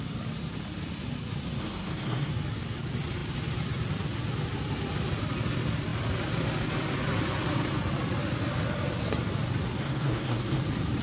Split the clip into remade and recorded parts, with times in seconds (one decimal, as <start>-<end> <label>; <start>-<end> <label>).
0.0-1.6 recorded; 1.6-2.3 remade; 2.3-9.8 recorded; 9.8-10.6 remade; 10.6-11.0 recorded